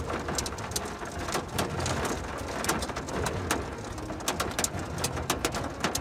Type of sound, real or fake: real